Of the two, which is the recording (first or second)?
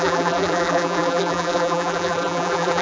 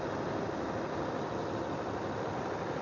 second